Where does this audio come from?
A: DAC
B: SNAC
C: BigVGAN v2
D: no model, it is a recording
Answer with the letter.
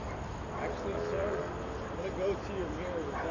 D